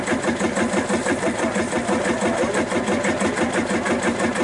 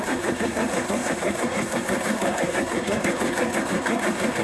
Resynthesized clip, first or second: second